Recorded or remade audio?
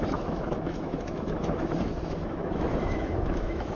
remade